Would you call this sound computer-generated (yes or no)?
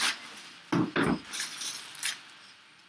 no